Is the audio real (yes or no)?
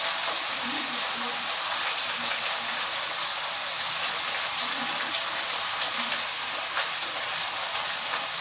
yes